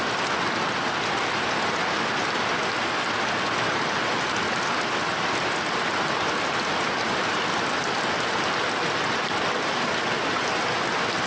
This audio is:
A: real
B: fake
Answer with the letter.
A